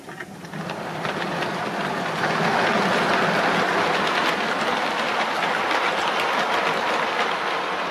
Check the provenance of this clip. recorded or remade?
recorded